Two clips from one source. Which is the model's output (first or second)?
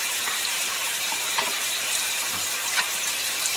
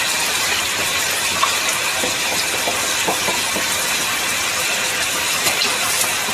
first